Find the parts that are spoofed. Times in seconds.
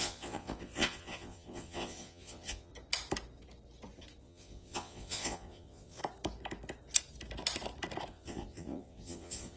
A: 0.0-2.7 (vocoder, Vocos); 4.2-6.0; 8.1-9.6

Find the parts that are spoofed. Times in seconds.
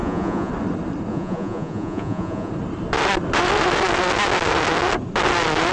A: 0.0-0.5 (vocoder, Vocos); 1.1-2.5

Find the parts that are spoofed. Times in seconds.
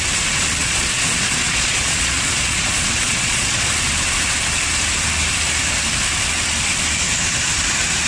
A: 0.6-3.7 (vocoder, Vocos)